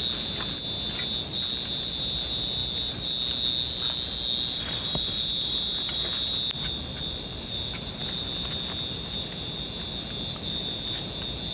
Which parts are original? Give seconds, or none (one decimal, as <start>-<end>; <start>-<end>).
0.0-11.5